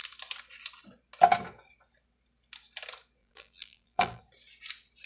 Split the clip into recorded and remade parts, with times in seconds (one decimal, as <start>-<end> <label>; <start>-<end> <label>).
0.0-3.2 recorded; 3.2-4.2 remade; 4.2-5.1 recorded